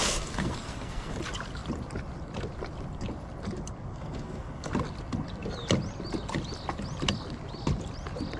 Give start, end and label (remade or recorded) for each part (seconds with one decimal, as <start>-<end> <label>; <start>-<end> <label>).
0.0-1.2 remade; 1.2-3.9 recorded; 3.9-4.7 remade; 4.7-8.4 recorded